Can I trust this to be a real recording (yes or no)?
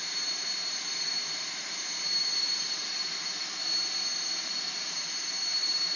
no